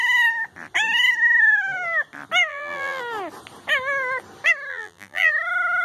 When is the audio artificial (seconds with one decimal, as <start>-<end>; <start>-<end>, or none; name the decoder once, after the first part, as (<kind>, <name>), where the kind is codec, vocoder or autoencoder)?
2.5-3.0 (vocoder, BigVGAN v2); 4.7-5.3